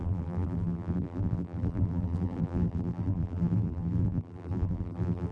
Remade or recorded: remade